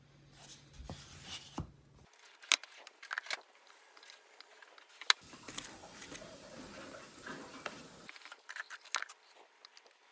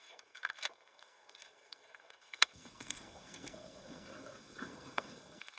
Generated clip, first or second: second